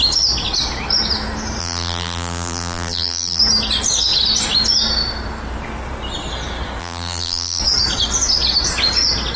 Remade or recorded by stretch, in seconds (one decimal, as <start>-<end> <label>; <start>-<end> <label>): 0.0-1.6 recorded; 1.6-3.4 remade; 3.4-6.8 recorded; 6.8-7.6 remade; 7.6-9.4 recorded